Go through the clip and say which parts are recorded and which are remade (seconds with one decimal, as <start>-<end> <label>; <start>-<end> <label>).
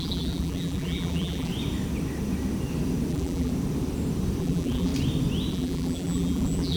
0.0-1.5 remade; 1.5-3.1 recorded; 3.1-3.5 remade; 3.5-4.4 recorded; 4.4-4.9 remade; 4.9-5.5 recorded; 5.5-6.8 remade